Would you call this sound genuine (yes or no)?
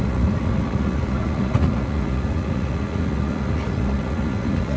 no